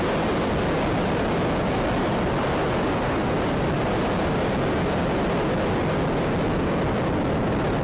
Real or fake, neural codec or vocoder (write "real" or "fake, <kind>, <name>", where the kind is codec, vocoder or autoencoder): real